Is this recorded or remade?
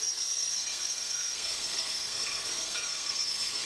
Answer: remade